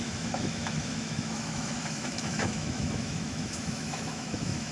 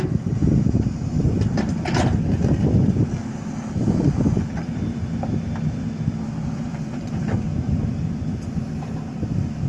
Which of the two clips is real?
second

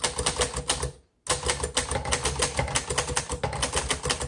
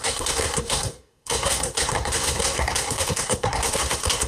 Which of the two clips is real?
first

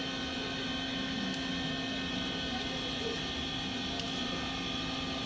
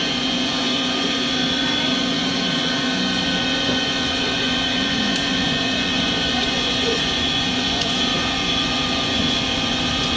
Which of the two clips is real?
first